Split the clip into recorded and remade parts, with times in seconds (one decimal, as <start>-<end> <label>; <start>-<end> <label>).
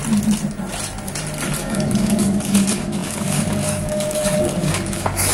0.0-1.6 recorded; 1.6-5.3 remade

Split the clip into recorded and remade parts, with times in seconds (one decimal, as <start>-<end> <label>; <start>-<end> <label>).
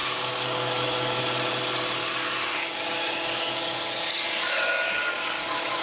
0.0-1.2 remade; 1.2-2.0 recorded; 2.0-5.8 remade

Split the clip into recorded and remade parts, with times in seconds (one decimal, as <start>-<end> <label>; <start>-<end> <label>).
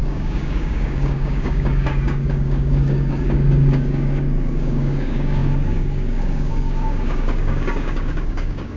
0.0-8.8 remade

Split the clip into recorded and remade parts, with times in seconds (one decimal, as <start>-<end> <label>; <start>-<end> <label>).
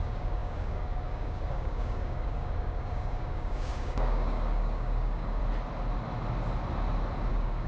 0.0-5.4 remade; 5.4-7.3 recorded; 7.3-7.7 remade